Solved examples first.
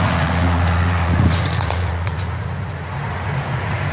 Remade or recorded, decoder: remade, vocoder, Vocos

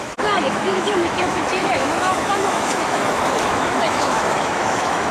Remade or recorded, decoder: remade, autoencoder, DAC-VAE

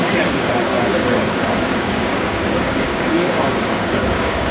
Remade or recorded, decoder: remade, codec, DAC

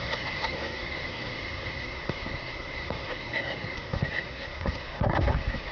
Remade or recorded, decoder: remade, codec, SNAC